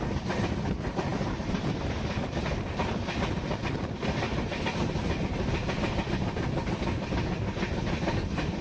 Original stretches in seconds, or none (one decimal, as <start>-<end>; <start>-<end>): 0.0-1.1; 2.2-8.6